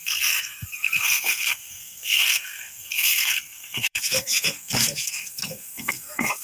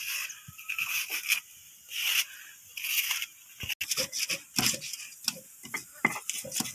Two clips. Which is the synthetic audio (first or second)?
first